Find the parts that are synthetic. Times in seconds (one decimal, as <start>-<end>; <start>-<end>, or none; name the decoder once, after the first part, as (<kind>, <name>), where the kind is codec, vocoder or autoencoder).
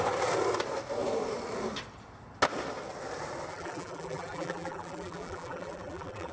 3.5-6.3 (vocoder, BigVGAN v2)